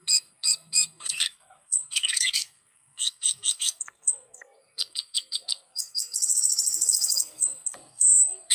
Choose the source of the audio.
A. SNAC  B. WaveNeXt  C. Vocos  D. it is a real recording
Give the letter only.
A